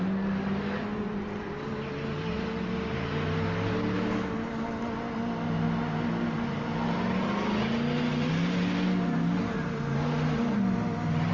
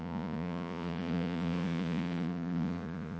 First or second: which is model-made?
second